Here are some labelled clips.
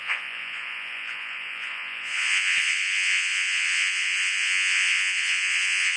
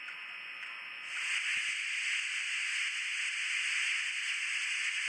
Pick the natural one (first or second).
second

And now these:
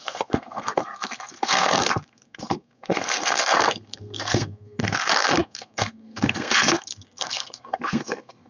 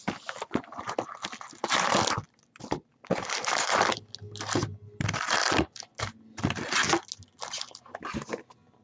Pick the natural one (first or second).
second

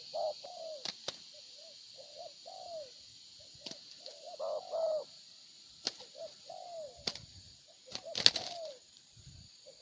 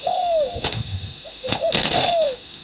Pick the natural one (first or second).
first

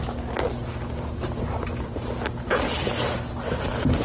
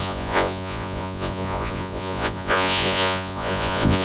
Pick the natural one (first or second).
first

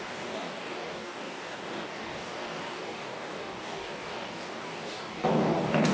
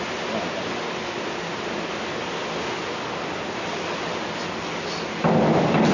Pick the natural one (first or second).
second